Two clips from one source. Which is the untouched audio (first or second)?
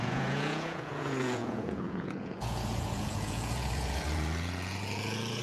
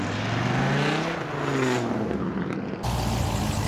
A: second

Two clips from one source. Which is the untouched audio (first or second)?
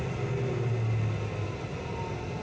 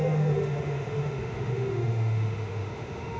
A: first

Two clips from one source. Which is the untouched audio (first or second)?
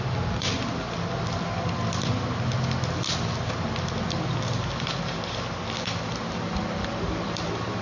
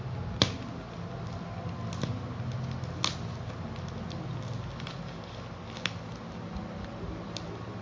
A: second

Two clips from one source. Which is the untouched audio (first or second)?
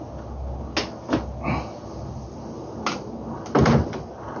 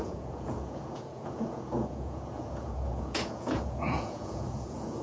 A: first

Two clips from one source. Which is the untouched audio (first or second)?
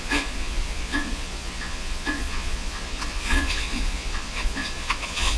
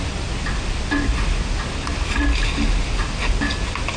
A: second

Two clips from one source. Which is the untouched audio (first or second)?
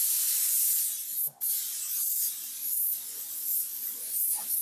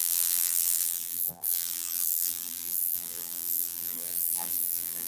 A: first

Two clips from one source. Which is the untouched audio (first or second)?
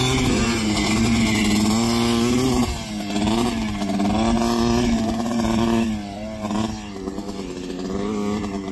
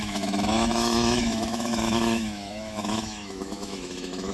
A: first